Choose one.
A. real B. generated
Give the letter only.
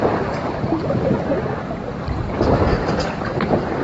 A